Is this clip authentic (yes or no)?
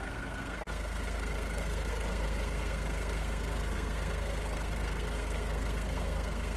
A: no